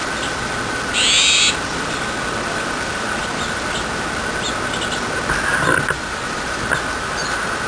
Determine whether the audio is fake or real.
real